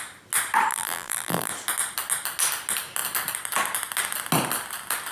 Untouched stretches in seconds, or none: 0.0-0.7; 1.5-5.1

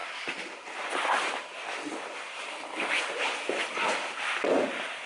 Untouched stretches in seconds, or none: 3.0-5.1

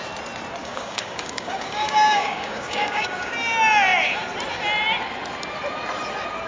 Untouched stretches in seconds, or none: 0.0-0.6; 3.3-6.5

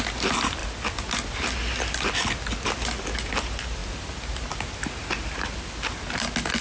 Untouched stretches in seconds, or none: 0.0-6.6

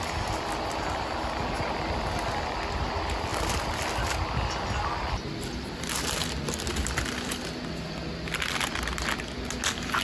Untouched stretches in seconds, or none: 0.0-10.0

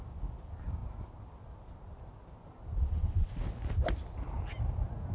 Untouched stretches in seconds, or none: 0.0-2.8; 3.3-5.1